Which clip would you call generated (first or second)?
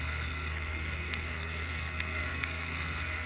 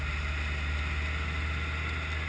first